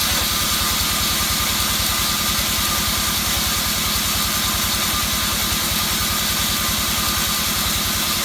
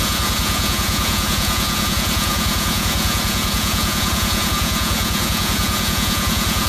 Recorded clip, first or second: first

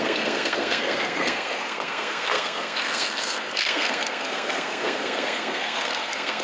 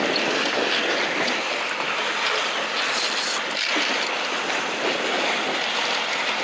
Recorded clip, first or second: second